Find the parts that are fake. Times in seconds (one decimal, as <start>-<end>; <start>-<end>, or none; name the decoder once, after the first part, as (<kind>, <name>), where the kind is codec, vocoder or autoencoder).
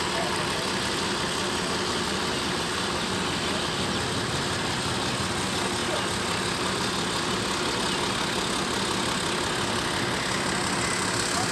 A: none